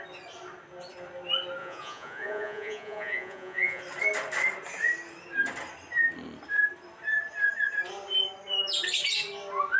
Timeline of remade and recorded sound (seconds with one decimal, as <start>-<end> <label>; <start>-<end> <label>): 0.0-1.6 recorded; 1.6-3.8 remade; 3.8-9.8 recorded